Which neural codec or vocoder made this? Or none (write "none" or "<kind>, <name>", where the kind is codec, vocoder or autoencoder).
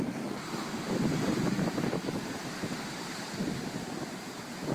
vocoder, BigVGAN v2